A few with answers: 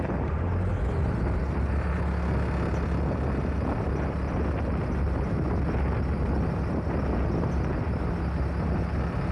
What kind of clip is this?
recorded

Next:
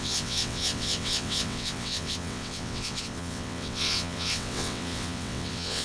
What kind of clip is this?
remade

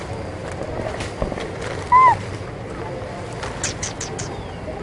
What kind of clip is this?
recorded